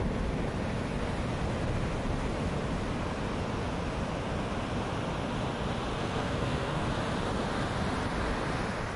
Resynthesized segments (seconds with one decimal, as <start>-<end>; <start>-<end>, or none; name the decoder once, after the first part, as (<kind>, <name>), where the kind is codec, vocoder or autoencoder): 5.9-6.9 (codec, SNAC)